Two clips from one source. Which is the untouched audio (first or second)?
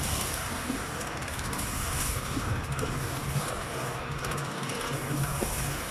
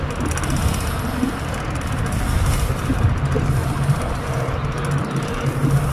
second